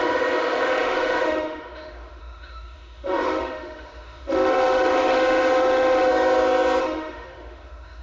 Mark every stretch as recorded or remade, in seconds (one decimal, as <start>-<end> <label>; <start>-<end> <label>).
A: 0.0-6.1 remade; 6.1-6.8 recorded; 6.8-8.0 remade